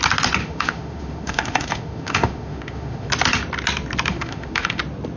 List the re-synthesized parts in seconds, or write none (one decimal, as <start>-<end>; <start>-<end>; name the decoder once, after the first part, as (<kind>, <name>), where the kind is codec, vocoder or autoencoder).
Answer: 0.4-3.1 (autoencoder, DAC-VAE); 4.1-4.8